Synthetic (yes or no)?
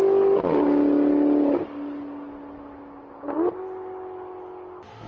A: no